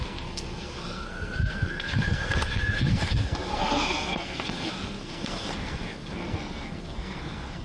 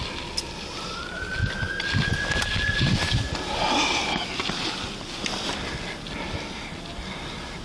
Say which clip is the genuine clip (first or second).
second